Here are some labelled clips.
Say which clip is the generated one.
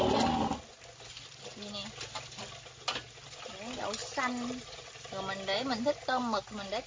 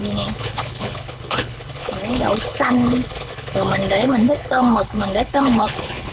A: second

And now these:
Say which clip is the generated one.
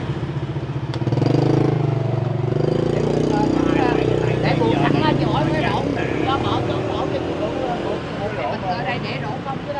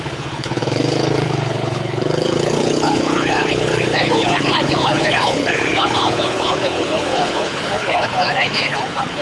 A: second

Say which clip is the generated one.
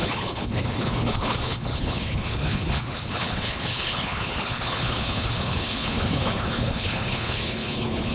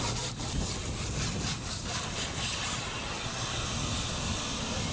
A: first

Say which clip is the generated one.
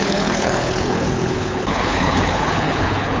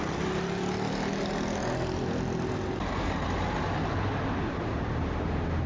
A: first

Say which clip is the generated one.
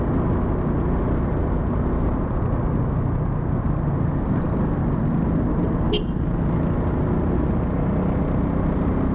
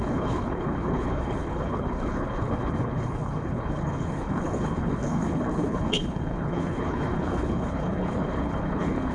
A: second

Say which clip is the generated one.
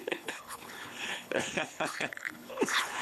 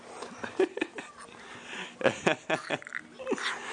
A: first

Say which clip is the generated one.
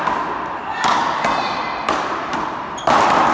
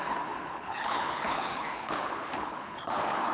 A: second